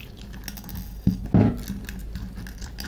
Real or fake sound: real